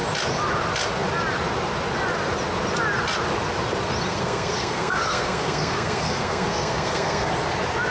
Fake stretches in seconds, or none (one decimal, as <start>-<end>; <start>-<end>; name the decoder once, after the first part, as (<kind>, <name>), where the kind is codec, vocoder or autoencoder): 4.1-7.3 (codec, SNAC)